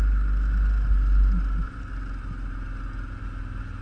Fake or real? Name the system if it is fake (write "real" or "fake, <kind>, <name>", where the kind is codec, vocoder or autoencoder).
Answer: real